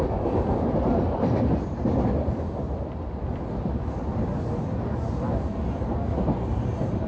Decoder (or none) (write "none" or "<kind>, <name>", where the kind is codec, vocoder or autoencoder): none